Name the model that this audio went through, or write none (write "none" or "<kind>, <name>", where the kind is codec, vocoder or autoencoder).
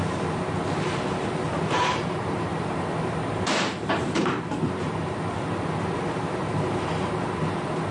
vocoder, BigVGAN v2